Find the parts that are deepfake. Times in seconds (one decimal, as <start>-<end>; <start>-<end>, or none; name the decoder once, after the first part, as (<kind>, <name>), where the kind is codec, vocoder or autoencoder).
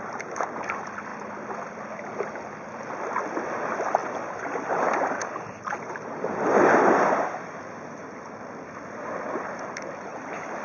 none